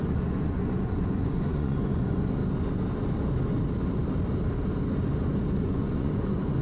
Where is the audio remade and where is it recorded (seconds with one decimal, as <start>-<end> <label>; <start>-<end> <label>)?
0.0-2.4 remade; 2.4-5.5 recorded; 5.5-6.6 remade